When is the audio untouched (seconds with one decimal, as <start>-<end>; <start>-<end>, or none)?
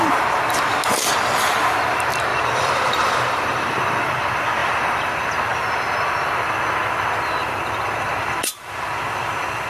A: 0.0-2.3; 4.1-4.6; 5.1-9.7